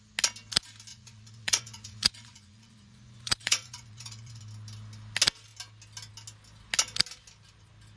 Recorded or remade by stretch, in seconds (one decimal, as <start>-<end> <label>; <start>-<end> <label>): 0.0-0.9 recorded; 0.9-4.4 remade; 4.4-8.0 recorded